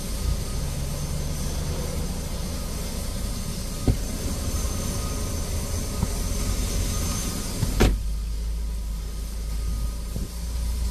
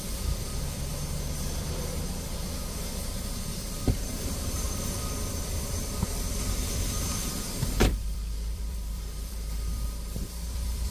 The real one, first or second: first